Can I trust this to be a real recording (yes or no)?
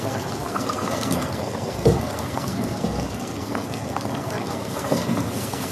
no